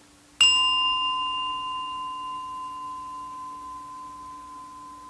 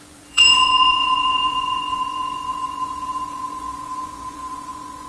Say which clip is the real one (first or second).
first